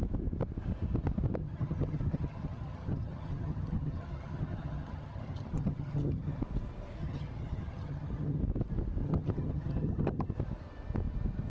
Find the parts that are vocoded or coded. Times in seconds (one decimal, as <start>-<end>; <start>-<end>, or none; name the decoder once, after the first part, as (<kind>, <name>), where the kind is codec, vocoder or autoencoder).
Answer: 1.4-6.4 (vocoder, HiFi-GAN); 7.0-8.4; 9.0-10.3